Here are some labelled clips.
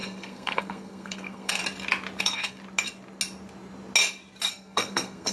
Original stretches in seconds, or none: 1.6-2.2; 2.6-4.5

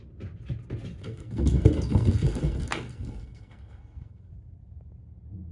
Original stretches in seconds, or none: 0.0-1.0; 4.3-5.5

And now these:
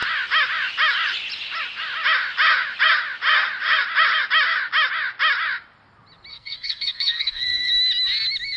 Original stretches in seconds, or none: 0.0-6.3; 7.7-8.6